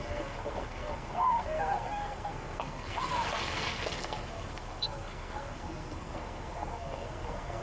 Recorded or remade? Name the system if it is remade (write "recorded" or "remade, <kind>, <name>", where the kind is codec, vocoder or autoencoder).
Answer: remade, codec, SNAC